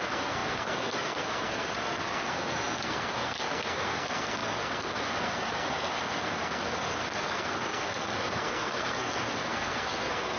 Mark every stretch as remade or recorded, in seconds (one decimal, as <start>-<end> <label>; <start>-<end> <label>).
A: 0.0-10.4 remade

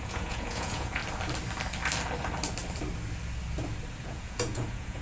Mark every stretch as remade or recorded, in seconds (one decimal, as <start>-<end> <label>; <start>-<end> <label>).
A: 0.0-1.0 remade; 1.0-4.0 recorded; 4.0-5.0 remade

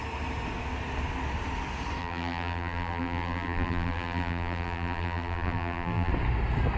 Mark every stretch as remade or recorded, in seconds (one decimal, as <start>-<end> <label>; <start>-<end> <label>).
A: 0.0-2.0 recorded; 2.0-6.1 remade; 6.1-6.8 recorded

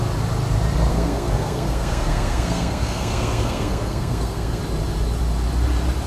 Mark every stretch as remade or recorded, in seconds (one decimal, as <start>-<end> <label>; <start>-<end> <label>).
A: 0.0-0.9 recorded; 0.9-4.6 remade; 4.6-6.1 recorded

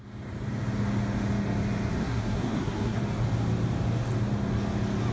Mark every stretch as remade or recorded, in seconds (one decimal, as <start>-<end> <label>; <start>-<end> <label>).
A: 0.0-2.0 recorded; 2.0-3.0 remade; 3.0-5.1 recorded

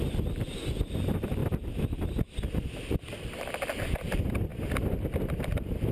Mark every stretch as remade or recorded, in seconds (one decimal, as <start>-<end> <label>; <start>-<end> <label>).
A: 0.0-1.4 remade; 1.4-3.0 recorded; 3.0-4.5 remade; 4.5-5.5 recorded; 5.5-5.9 remade

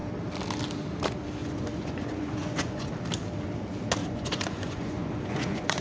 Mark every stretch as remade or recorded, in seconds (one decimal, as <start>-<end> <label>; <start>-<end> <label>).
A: 0.0-1.4 recorded; 1.4-2.9 remade; 2.9-4.0 recorded; 4.0-5.8 remade

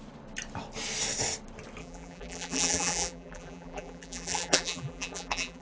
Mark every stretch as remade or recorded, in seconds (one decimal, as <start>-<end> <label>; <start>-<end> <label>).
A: 0.0-1.8 recorded; 1.8-5.6 remade